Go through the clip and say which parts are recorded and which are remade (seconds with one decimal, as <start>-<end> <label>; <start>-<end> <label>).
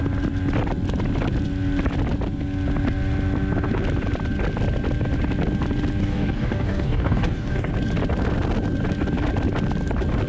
0.0-6.0 recorded; 6.0-7.7 remade; 7.7-10.3 recorded